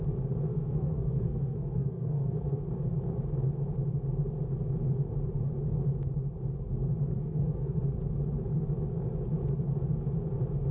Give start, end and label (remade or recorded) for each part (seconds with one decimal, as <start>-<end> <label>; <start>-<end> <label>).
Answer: 0.0-0.5 recorded; 0.5-2.6 remade; 2.6-7.1 recorded; 7.1-7.8 remade; 7.8-10.7 recorded